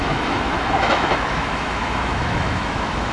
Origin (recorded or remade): remade